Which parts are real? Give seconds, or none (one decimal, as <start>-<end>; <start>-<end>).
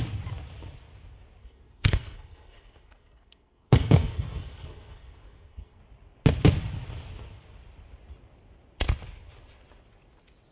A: 0.0-1.4; 5.8-10.5